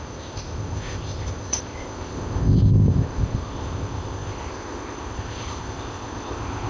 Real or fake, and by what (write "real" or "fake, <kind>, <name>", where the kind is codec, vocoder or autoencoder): fake, codec, ZipCodec